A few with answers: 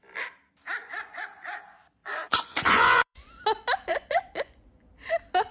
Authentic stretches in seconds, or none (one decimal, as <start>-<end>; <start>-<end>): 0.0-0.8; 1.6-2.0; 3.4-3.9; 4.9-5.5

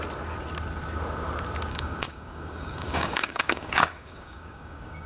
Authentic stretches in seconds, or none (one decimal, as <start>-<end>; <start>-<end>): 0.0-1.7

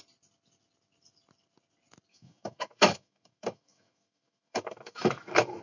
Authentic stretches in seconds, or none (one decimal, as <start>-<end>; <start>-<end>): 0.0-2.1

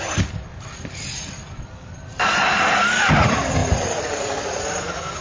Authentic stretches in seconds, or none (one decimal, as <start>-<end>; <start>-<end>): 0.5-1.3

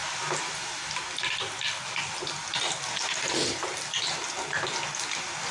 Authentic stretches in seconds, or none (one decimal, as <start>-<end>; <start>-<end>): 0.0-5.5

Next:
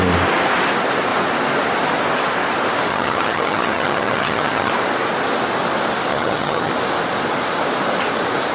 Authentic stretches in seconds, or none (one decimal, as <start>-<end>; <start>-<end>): 0.0-2.9; 4.7-6.1; 6.7-8.5

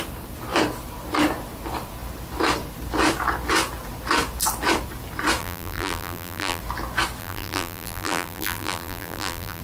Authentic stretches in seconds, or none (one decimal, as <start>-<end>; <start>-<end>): 0.0-5.4; 6.6-7.2

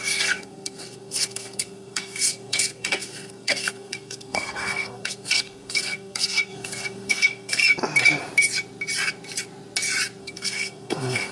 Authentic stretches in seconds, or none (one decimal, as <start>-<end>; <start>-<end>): 7.6-10.2